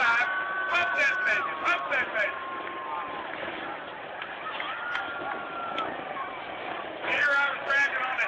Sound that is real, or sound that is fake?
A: real